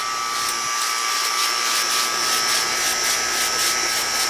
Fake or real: real